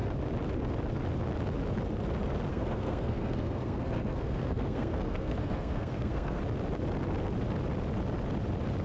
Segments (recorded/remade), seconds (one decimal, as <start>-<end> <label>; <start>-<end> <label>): 0.0-2.5 recorded; 2.5-6.4 remade; 6.4-8.8 recorded

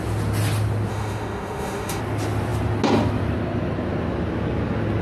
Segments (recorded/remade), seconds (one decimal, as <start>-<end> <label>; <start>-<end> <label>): 0.0-0.9 recorded; 0.9-2.0 remade; 2.0-5.0 recorded

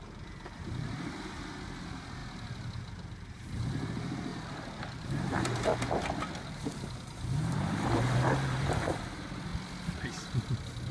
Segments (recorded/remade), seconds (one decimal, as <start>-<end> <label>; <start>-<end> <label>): 0.0-5.7 remade; 5.7-6.4 recorded; 6.4-9.5 remade; 9.5-10.9 recorded

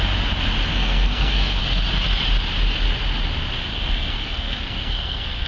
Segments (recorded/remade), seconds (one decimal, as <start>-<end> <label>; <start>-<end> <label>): 0.0-0.7 recorded; 0.7-1.6 remade; 1.6-3.7 recorded; 3.7-5.5 remade

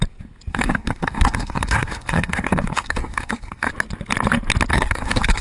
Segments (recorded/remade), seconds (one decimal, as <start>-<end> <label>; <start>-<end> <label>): 0.0-0.5 recorded; 0.5-3.7 remade; 3.7-4.7 recorded; 4.7-5.4 remade

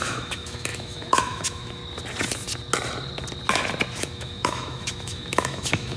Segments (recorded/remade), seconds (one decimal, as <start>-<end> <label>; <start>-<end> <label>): 0.0-1.8 remade; 1.8-4.0 recorded; 4.0-6.0 remade

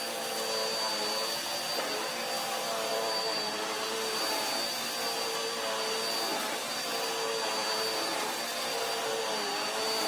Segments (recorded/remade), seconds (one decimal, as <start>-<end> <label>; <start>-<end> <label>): 0.0-2.9 recorded; 2.9-4.2 remade; 4.2-10.1 recorded